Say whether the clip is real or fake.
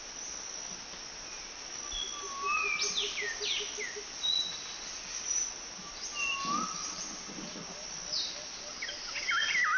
real